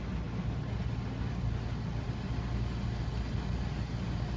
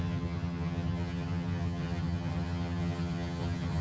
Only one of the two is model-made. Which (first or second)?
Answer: second